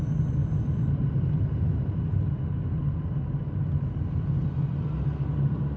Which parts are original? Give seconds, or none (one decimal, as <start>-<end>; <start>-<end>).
0.0-5.8